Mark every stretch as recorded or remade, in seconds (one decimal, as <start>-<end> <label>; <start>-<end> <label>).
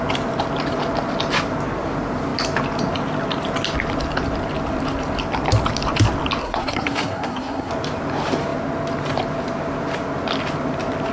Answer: 0.0-6.4 recorded; 6.4-7.7 remade; 7.7-11.1 recorded